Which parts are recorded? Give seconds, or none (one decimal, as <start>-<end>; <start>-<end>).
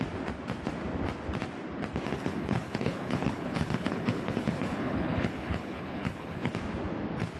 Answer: 0.0-2.1; 6.5-7.4